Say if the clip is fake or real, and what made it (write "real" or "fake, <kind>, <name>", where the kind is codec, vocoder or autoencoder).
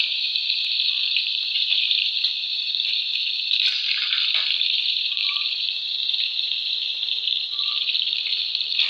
fake, vocoder, BigVGAN v2